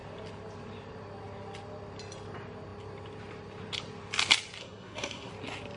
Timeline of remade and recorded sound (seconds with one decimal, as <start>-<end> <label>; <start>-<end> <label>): 0.0-4.6 recorded; 4.6-5.3 remade; 5.3-5.8 recorded